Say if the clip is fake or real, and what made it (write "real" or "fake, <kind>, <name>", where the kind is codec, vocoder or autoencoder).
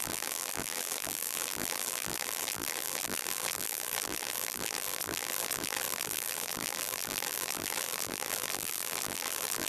fake, vocoder, BigVGAN v2